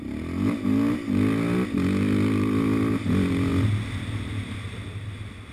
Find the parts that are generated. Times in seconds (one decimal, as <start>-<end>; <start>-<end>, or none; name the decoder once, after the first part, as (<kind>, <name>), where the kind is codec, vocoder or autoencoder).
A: none